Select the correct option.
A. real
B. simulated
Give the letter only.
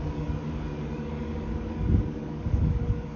B